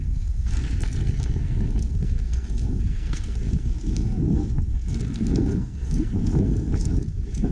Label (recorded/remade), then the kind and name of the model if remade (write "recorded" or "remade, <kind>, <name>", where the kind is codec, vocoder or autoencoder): remade, codec, SNAC